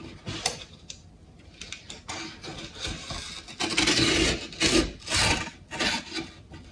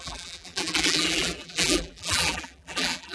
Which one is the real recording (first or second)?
first